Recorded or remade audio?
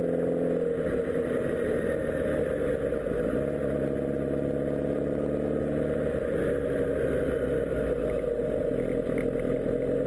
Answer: recorded